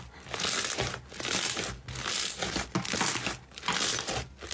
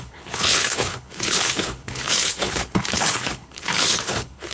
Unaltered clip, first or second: first